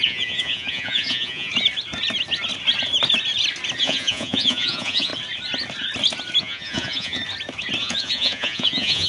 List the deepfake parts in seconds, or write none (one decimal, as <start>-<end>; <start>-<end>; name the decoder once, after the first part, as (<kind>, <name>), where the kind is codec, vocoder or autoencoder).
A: 0.0-1.5 (vocoder, Vocos); 3.8-5.1; 6.4-7.2; 7.8-9.1